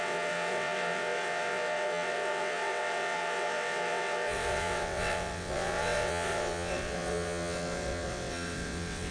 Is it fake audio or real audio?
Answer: fake